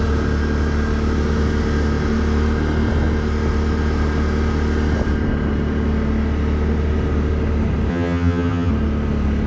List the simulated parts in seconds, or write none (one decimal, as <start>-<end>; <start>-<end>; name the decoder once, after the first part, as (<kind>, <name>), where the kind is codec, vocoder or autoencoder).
7.9-8.7 (vocoder, HiFi-GAN)